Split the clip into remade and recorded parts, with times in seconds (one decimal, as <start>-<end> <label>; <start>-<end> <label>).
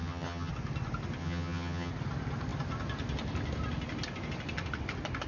0.0-0.5 remade; 0.5-1.2 recorded; 1.2-1.9 remade; 1.9-5.3 recorded